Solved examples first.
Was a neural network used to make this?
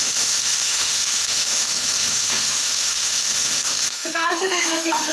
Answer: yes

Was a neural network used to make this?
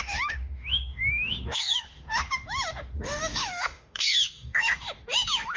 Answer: yes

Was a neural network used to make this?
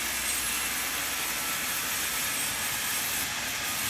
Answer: no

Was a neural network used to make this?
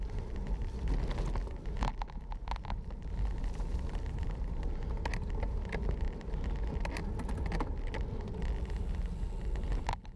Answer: no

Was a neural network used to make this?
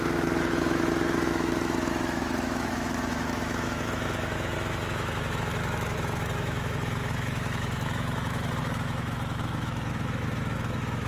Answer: yes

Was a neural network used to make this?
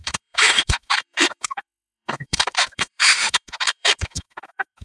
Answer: yes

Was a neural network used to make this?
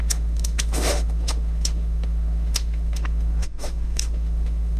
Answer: yes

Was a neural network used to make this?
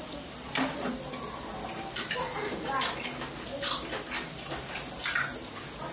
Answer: no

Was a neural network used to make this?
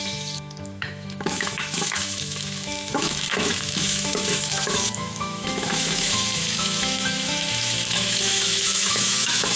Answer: yes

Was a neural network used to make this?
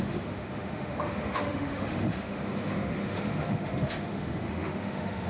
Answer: yes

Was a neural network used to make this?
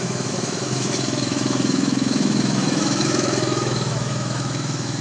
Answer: yes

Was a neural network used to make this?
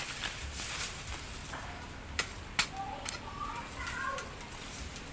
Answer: no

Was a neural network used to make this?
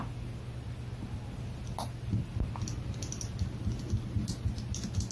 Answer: no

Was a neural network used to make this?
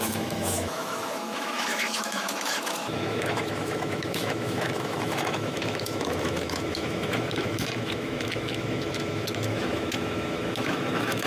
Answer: yes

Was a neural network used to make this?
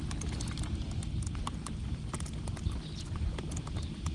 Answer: no